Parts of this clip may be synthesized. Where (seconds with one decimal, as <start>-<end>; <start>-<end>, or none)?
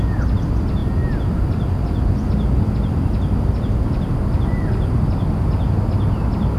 none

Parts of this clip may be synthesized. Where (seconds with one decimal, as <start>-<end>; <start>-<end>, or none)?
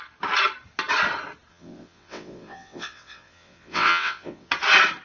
1.5-4.5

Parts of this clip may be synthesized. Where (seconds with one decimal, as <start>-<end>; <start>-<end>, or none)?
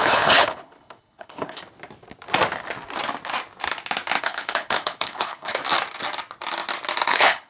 0.0-1.6; 4.2-5.6; 7.1-7.5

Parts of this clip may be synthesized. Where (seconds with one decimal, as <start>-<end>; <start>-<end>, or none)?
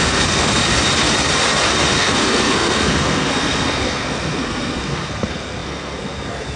0.0-0.6; 1.9-6.6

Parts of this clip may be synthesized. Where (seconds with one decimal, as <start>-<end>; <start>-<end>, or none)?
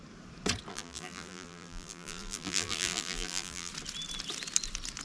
0.7-3.7